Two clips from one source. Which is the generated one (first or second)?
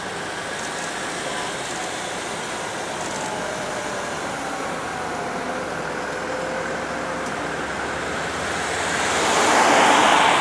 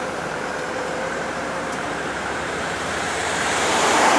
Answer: second